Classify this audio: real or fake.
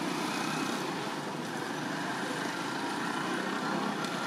real